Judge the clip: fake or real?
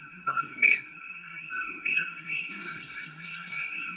fake